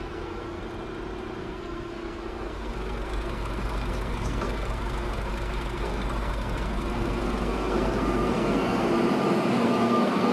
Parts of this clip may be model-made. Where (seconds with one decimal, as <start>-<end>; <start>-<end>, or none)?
0.0-0.6; 1.4-8.9; 9.5-10.3